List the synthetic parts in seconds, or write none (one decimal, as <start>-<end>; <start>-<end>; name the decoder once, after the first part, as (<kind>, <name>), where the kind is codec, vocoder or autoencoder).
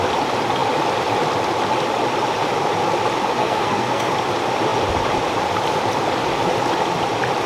3.4-4.1 (codec, SNAC)